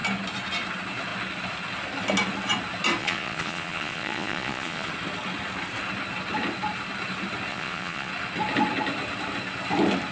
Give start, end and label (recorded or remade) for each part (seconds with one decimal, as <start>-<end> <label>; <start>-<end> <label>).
0.0-3.0 recorded; 3.0-4.9 remade; 4.9-7.5 recorded; 7.5-8.1 remade; 8.1-10.1 recorded